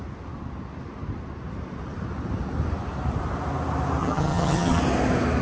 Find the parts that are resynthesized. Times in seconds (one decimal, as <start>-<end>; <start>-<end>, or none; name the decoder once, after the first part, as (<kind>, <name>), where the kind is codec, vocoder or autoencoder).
4.0-4.8 (vocoder, HiFi-GAN)